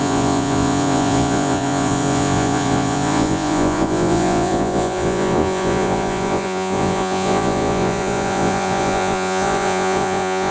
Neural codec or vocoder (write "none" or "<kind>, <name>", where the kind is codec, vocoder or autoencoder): vocoder, Vocos